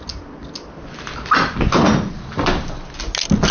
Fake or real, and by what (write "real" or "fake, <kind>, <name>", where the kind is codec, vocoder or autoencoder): real